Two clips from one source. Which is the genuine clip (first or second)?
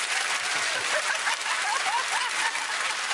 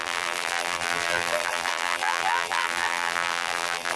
first